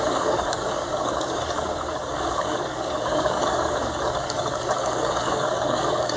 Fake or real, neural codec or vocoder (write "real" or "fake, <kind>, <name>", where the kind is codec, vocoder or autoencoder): fake, codec, DAC